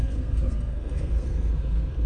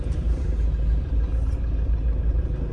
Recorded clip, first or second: second